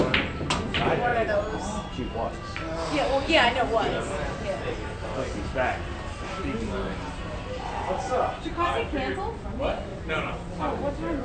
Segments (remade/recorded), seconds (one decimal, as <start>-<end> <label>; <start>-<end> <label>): 0.0-9.9 recorded; 9.9-10.5 remade; 10.5-11.2 recorded